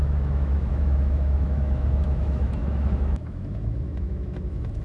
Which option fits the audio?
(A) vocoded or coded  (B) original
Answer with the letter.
A